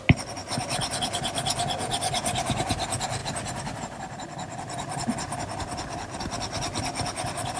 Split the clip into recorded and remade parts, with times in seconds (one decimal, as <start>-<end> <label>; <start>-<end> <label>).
0.0-7.6 recorded